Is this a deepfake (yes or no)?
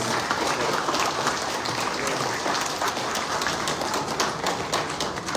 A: no